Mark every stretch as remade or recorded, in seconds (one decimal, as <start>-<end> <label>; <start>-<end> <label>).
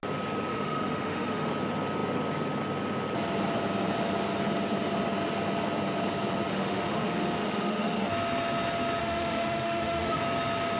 0.0-0.5 recorded; 0.5-1.5 remade; 1.5-6.5 recorded; 6.5-8.1 remade; 8.1-9.0 recorded; 9.0-10.2 remade; 10.2-10.8 recorded